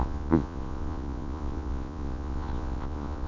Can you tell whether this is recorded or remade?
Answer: remade